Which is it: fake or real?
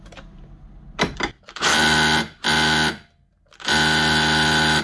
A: real